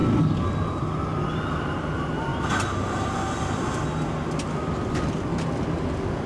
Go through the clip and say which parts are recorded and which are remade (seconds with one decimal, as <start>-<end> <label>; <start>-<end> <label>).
0.0-1.5 recorded; 1.5-2.3 remade; 2.3-6.3 recorded